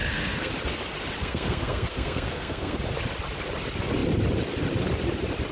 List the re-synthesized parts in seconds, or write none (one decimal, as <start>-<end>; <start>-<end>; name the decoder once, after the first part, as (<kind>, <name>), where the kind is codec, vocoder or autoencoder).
0.0-0.5 (codec, SNAC); 1.2-2.8